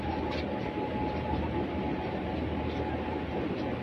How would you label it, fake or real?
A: real